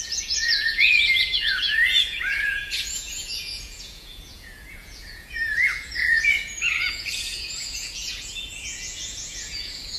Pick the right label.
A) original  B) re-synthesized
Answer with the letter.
B